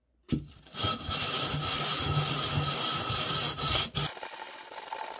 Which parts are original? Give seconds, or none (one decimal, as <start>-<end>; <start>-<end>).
0.0-5.2